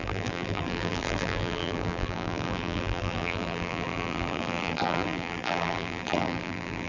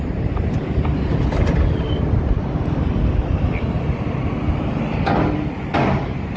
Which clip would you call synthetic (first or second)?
first